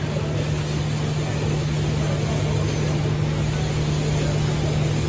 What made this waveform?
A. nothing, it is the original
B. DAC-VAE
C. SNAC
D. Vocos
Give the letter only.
A